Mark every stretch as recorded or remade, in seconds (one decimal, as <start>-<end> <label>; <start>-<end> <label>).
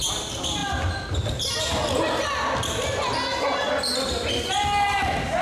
0.0-5.4 recorded